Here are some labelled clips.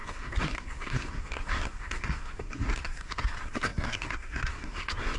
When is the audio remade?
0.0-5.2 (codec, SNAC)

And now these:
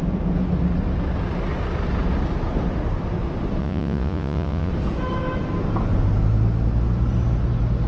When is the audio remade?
3.6-4.7 (vocoder, Vocos)

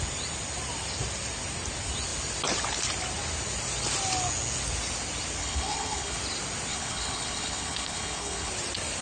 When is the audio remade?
5.4-6.2 (codec, HILCodec); 6.7-8.5

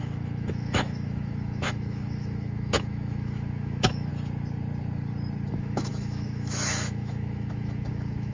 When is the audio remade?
0.0-4.1 (autoencoder, DAC-VAE); 5.5-8.3

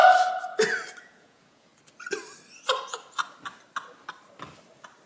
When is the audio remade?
1.0-1.7 (vocoder, Vocos)